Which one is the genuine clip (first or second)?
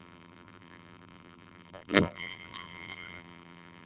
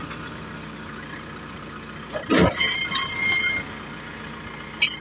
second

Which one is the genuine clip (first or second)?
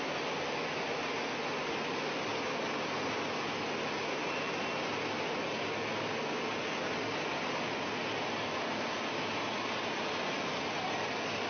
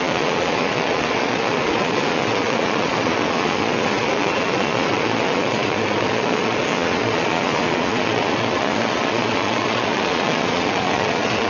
first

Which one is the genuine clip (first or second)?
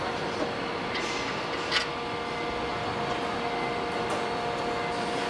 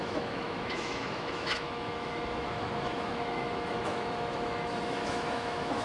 first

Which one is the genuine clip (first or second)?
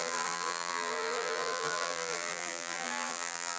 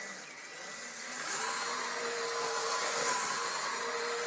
second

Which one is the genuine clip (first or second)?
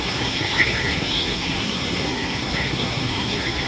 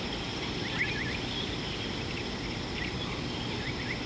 second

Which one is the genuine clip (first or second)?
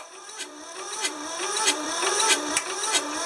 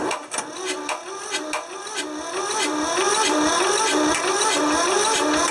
second